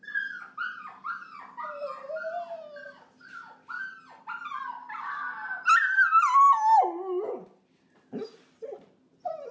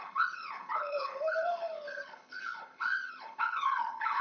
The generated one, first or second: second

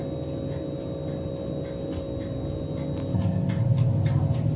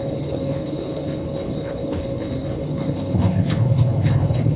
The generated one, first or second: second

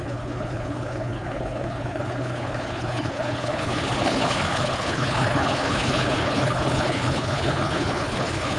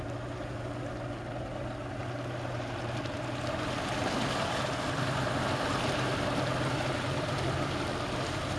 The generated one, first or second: first